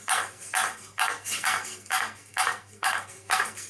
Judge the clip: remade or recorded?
remade